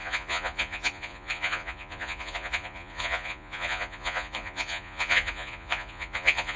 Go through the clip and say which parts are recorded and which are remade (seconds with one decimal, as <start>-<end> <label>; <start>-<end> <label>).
0.0-6.6 remade